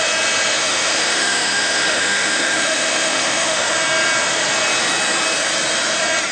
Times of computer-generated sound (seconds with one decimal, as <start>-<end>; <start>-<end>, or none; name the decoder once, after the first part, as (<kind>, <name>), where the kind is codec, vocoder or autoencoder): 0.6-3.7 (autoencoder, DAC-VAE)